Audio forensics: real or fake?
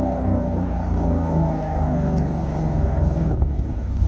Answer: fake